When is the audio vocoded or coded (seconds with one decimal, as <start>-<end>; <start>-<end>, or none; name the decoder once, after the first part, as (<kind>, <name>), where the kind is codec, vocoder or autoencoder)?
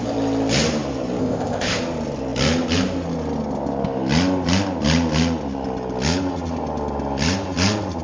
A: 1.2-1.8 (codec, ZipCodec)